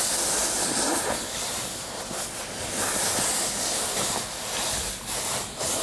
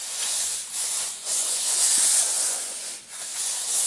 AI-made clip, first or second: second